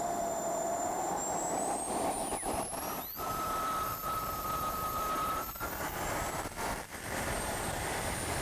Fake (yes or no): yes